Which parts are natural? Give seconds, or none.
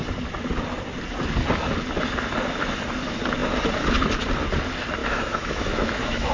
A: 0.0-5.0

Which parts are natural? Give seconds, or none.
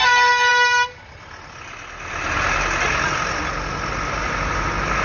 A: 0.0-5.0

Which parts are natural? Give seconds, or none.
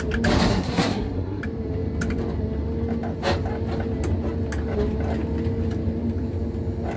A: 0.0-0.5; 1.4-7.0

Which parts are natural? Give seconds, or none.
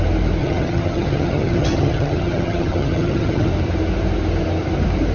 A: 0.0-0.4; 3.5-5.1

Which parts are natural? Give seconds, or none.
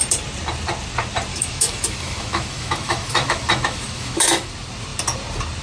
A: 0.0-1.3; 4.5-5.6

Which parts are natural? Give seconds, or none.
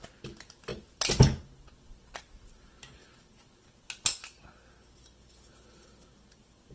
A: 0.0-6.7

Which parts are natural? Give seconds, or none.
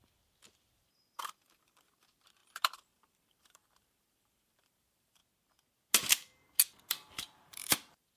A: 0.0-1.2; 5.2-6.9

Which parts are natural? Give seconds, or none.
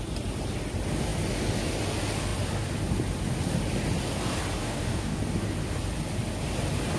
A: 0.0-4.6; 5.2-7.0